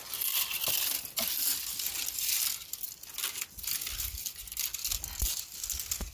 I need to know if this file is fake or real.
real